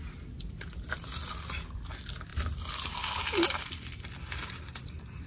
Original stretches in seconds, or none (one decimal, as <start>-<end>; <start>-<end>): 0.0-5.3